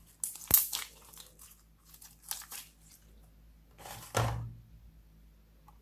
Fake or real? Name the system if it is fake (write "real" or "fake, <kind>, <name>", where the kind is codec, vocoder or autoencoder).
real